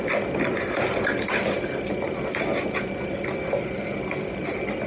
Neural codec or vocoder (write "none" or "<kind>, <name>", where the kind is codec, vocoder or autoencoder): none